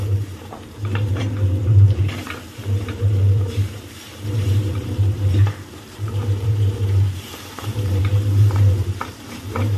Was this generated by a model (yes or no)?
yes